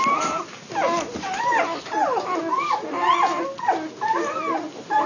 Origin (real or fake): real